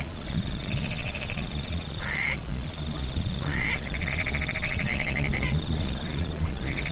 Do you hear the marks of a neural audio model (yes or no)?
yes